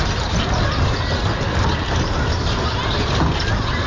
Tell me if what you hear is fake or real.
real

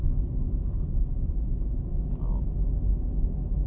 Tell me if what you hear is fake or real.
real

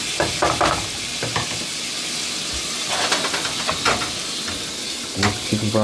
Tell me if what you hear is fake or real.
real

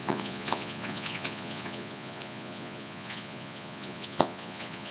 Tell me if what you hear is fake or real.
fake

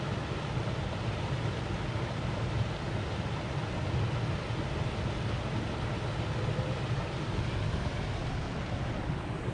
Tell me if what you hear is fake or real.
real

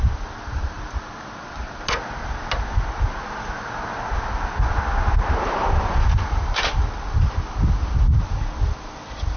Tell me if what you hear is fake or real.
real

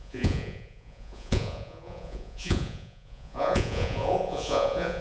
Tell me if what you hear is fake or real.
fake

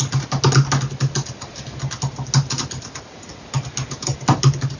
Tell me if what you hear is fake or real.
real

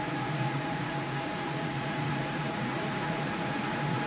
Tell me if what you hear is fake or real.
fake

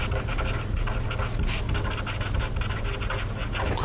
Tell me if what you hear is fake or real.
real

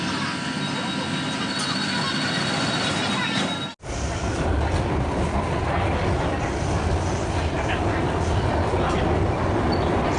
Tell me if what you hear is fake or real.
real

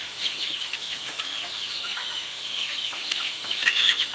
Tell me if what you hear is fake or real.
fake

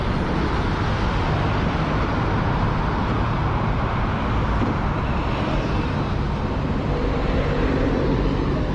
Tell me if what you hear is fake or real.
real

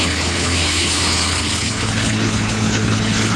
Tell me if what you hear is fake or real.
fake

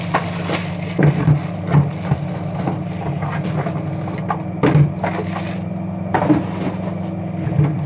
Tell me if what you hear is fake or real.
real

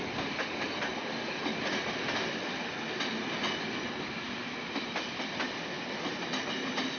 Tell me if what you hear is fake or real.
real